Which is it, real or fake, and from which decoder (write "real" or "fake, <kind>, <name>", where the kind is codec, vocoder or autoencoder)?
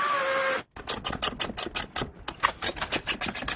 real